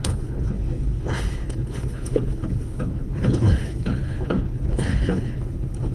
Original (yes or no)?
no